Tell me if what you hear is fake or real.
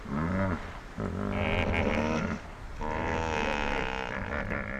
real